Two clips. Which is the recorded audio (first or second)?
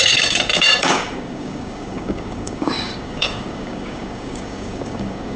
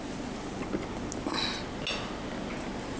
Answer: second